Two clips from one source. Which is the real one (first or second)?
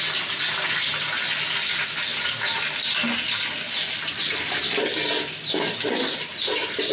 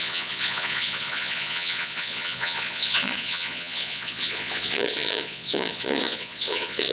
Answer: first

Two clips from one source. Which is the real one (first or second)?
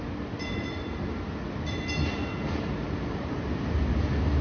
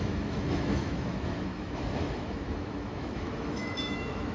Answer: first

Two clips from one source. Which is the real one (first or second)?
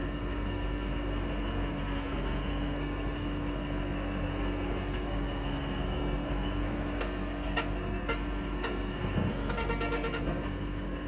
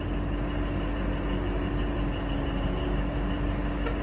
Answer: second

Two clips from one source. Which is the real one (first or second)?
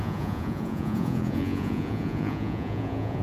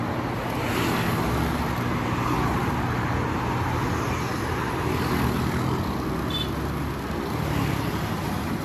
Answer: second